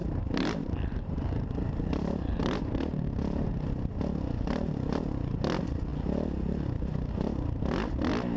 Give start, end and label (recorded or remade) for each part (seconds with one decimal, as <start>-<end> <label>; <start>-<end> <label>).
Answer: 0.0-3.5 remade; 3.5-8.4 recorded

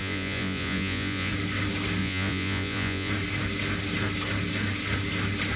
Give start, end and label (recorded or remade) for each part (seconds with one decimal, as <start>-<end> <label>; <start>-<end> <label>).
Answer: 0.0-1.3 remade; 1.3-2.0 recorded; 2.0-3.1 remade; 3.1-5.6 recorded

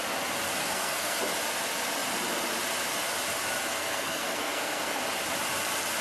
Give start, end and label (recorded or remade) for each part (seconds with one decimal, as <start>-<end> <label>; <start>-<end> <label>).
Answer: 0.0-0.6 recorded; 0.6-1.2 remade; 1.2-3.7 recorded; 3.7-5.0 remade; 5.0-6.0 recorded

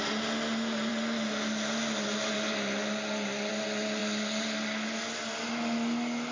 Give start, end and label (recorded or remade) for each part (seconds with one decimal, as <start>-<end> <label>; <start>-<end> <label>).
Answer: 0.0-6.3 recorded

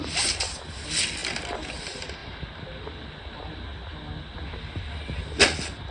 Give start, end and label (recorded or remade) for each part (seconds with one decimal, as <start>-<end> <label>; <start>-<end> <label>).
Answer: 0.0-5.9 recorded

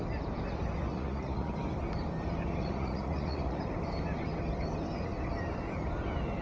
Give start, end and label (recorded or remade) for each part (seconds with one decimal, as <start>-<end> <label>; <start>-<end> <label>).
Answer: 0.0-0.9 recorded; 0.9-1.5 remade; 1.5-2.6 recorded; 2.6-3.6 remade; 3.6-6.4 recorded